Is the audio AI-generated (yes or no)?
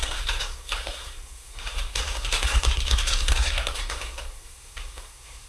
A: yes